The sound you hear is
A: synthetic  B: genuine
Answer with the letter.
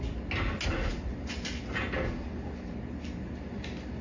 B